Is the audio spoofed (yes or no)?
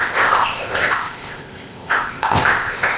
yes